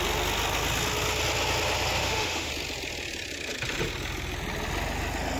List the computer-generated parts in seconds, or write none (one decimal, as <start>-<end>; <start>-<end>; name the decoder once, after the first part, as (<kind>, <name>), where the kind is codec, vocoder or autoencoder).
2.0-2.5 (autoencoder, DAC-VAE)

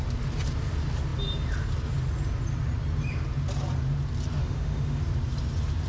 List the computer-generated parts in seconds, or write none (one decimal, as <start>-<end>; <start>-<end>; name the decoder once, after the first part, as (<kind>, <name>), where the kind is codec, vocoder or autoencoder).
4.4-5.0 (autoencoder, DAC-VAE)

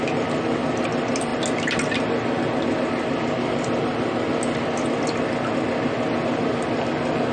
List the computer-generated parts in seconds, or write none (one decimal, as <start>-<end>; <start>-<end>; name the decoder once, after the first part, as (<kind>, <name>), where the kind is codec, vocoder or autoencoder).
none

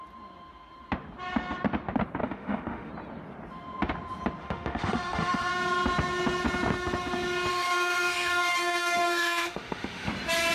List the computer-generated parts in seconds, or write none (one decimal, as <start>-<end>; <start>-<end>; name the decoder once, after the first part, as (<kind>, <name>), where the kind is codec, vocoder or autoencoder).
2.2-2.9 (autoencoder, DAC-VAE); 4.4-5.5; 7.5-10.1

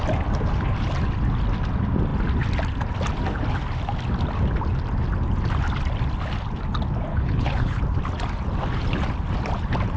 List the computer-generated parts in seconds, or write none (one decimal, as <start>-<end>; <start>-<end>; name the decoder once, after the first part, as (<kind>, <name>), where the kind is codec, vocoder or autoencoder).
7.1-7.8 (codec, HILCodec)

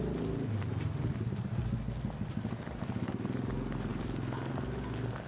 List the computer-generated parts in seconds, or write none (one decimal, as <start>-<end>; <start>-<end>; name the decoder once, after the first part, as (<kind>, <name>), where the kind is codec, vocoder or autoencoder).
none

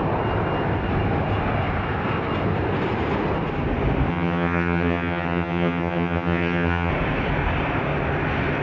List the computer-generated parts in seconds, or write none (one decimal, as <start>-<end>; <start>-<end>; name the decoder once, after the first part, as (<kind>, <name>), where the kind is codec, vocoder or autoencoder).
4.1-6.9 (vocoder, HiFi-GAN)